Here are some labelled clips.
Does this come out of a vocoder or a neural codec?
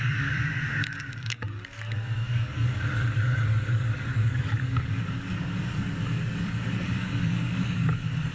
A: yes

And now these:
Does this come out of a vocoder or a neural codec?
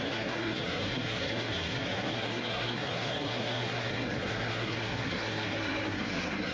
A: yes